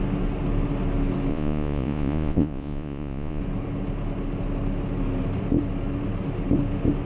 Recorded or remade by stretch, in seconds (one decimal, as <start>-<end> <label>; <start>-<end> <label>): 0.0-1.3 recorded; 1.3-3.4 remade; 3.4-7.0 recorded

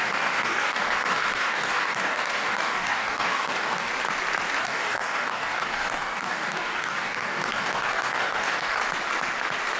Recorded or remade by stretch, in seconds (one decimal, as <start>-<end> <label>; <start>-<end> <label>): 0.0-3.9 remade; 3.9-4.6 recorded; 4.6-8.8 remade; 8.8-9.8 recorded

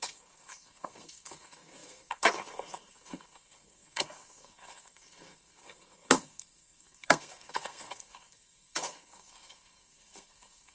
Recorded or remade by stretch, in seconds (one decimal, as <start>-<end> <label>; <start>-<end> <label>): 0.0-10.7 remade

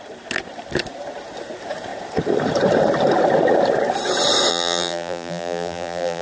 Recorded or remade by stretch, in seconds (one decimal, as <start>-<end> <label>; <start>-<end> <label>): 0.0-4.5 recorded; 4.5-6.2 remade

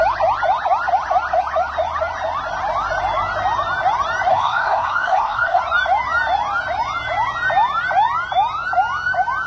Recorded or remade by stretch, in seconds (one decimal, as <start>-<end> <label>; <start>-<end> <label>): 0.0-4.3 recorded; 4.3-5.6 remade; 5.6-9.5 recorded

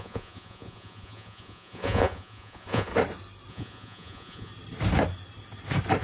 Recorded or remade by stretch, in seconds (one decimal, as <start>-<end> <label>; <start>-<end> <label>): 0.0-2.9 remade; 2.9-3.5 recorded; 3.5-4.5 remade; 4.5-6.0 recorded

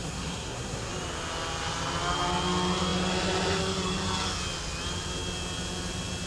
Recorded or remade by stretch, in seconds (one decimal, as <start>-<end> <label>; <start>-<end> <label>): 0.0-0.9 remade; 0.9-6.3 recorded